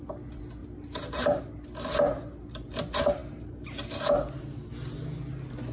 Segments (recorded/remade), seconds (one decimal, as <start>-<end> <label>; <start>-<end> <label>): 0.0-0.6 recorded; 0.6-1.4 remade; 1.4-5.7 recorded